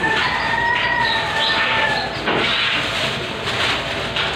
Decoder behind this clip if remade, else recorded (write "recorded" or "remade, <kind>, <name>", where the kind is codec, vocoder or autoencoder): recorded